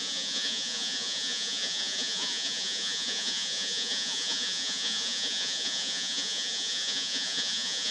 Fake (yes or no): yes